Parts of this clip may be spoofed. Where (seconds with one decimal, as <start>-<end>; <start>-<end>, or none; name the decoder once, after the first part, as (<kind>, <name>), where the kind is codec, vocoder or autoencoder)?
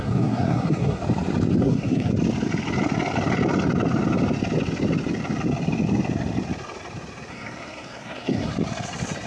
0.0-1.0 (codec, SNAC); 1.6-2.1; 7.3-8.5